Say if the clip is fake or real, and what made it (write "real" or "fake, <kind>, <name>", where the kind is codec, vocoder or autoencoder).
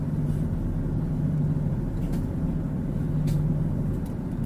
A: fake, vocoder, BigVGAN v2